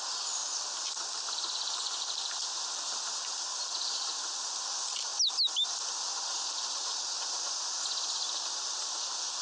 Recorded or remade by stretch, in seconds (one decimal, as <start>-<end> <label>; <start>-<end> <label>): 0.0-0.4 recorded; 0.4-2.6 remade; 2.6-9.4 recorded